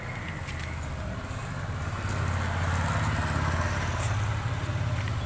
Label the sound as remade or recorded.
recorded